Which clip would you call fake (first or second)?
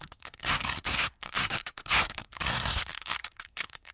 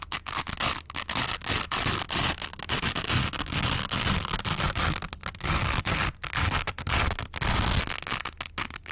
first